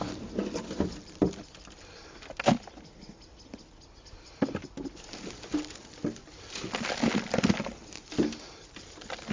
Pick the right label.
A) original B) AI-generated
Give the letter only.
A